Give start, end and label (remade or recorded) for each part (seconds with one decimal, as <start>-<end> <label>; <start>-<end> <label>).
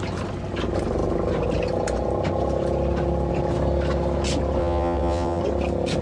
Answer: 0.0-4.6 recorded; 4.6-5.4 remade; 5.4-6.0 recorded